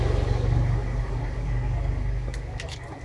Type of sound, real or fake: fake